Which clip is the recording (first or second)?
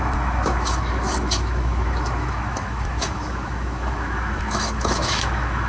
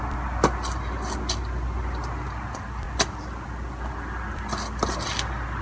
second